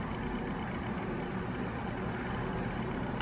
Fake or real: real